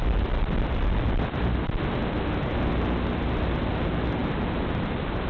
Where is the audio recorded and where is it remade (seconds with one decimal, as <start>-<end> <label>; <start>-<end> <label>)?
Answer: 0.0-4.2 recorded; 4.2-5.3 remade